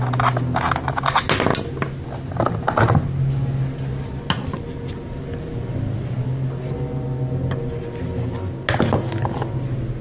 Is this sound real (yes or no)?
yes